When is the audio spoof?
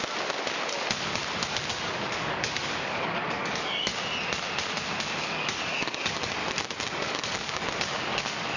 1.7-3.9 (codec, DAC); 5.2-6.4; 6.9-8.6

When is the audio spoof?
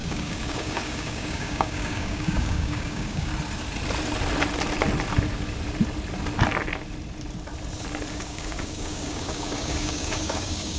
0.0-3.3 (codec, DAC); 8.1-10.8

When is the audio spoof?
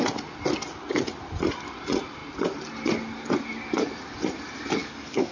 4.8-5.3 (codec, DAC)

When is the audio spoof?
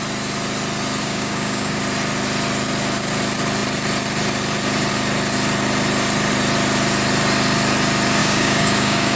1.0-1.8 (codec, DAC); 8.2-9.2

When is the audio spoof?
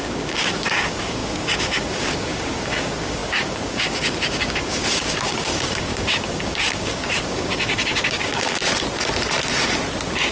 0.0-8.6 (codec, DAC)